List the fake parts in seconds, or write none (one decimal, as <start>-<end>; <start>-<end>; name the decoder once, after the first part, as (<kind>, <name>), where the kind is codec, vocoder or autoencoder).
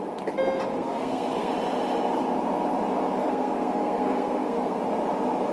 0.8-1.5 (codec, SNAC); 3.2-4.8